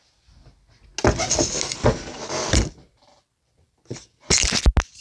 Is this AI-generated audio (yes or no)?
no